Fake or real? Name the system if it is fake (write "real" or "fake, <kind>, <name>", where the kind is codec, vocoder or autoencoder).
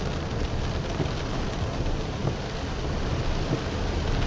real